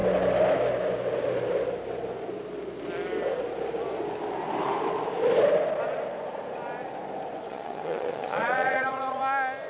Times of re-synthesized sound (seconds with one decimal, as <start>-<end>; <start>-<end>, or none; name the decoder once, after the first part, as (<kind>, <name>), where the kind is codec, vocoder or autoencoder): 7.5-9.2 (vocoder, Vocos)

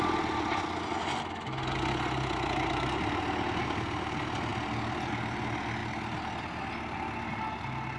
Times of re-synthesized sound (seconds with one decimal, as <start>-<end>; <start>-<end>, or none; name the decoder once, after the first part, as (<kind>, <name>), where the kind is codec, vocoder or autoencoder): none

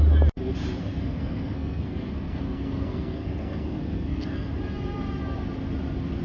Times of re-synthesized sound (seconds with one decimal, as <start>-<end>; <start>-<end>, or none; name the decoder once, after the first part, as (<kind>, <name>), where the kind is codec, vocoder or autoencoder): 0.8-4.5 (codec, SNAC)